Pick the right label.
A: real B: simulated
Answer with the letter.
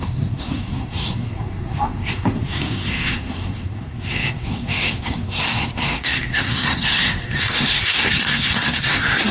B